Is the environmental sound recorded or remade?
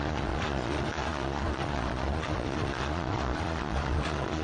remade